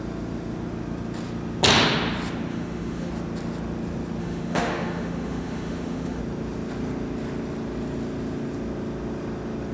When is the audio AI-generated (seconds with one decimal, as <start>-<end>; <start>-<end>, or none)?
2.5-3.1; 4.2-6.2